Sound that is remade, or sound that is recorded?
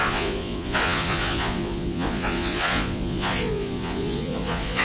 remade